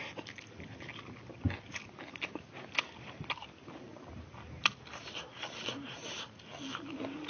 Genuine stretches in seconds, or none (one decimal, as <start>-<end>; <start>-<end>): 0.0-7.3